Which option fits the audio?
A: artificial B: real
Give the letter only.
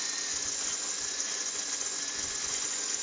A